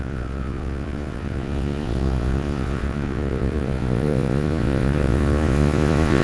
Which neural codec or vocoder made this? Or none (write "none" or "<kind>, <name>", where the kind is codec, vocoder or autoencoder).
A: vocoder, Vocos